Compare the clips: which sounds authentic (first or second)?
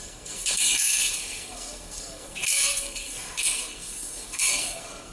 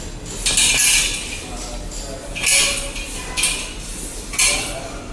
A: second